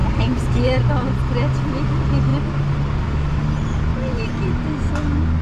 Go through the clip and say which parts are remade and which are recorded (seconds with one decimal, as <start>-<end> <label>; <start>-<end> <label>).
0.0-0.9 remade; 0.9-3.9 recorded; 3.9-4.9 remade; 4.9-5.4 recorded